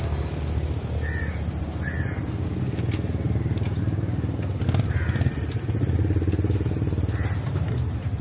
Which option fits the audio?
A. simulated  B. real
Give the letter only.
B